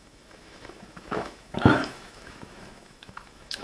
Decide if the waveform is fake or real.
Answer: fake